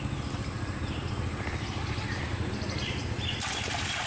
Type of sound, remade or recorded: remade